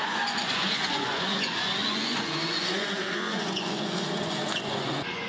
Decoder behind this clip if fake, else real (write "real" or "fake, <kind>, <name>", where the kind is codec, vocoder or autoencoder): fake, vocoder, Vocos